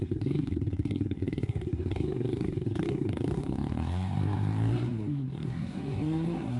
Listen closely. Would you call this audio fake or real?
fake